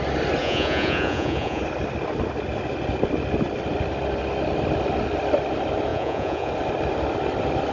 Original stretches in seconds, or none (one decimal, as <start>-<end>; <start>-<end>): 0.0-0.4; 1.6-5.9; 6.5-7.7